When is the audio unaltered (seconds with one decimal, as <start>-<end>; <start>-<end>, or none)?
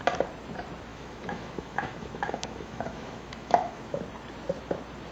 0.0-0.9; 4.0-5.1